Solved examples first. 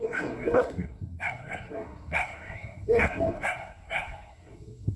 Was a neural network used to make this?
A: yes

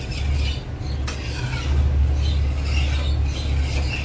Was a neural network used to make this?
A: no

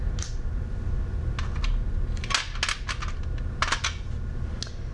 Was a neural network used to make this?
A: no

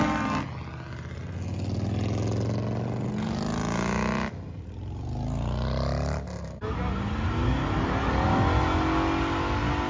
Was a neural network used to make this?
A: no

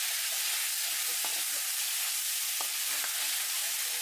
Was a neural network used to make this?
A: no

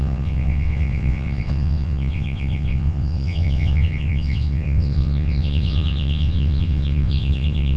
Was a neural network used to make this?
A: yes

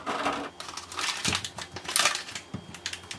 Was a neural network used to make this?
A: no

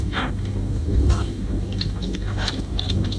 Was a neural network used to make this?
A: yes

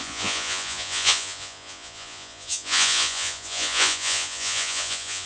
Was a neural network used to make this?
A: yes